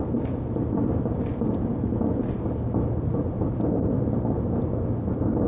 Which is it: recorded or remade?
recorded